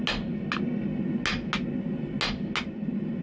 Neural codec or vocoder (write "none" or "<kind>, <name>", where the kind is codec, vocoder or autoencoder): none